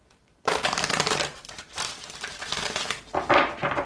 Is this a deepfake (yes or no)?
yes